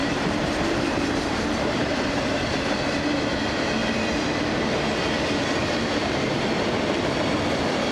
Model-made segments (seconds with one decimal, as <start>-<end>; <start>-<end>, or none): 0.0-1.1; 1.8-3.0; 5.6-6.4